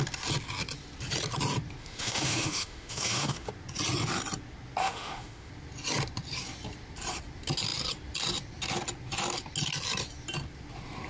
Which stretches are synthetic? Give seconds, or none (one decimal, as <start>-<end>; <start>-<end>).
1.8-3.5; 4.8-5.5